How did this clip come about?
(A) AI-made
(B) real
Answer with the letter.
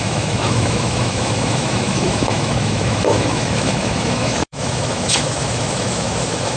A